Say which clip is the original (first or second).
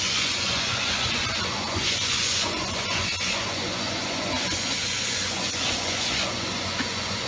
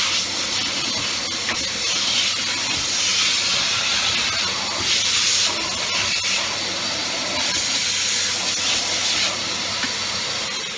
second